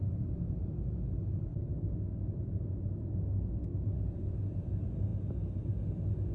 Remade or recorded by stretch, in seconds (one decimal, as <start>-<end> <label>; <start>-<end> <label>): 0.0-6.3 recorded

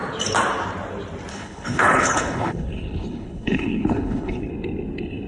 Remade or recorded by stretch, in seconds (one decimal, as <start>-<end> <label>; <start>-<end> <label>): 0.0-1.3 recorded; 1.3-4.5 remade; 4.5-5.3 recorded

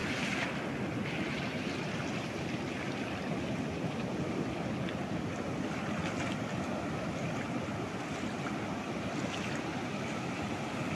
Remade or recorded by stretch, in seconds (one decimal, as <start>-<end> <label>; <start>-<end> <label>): 0.0-10.9 recorded